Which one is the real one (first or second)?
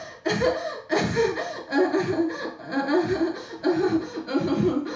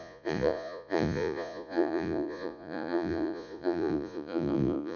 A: first